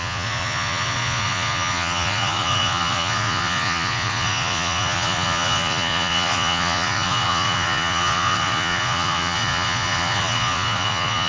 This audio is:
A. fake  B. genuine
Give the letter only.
A